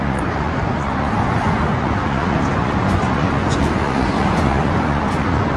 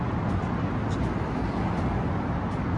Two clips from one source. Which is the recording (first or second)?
second